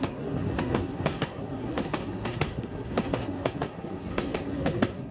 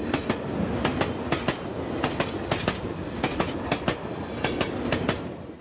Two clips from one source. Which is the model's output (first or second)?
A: first